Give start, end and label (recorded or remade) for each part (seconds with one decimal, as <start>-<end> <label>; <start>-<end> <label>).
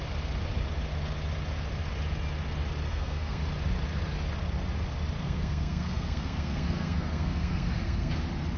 0.0-2.9 recorded; 2.9-3.4 remade; 3.4-5.2 recorded; 5.2-8.1 remade; 8.1-8.6 recorded